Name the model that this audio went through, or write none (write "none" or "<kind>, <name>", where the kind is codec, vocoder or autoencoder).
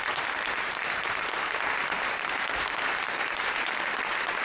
vocoder, BigVGAN v2